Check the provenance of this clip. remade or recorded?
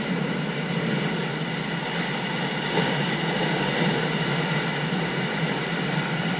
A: recorded